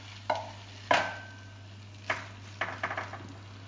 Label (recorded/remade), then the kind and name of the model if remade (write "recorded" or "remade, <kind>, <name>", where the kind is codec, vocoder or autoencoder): recorded